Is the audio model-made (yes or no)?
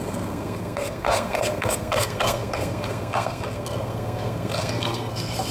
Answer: yes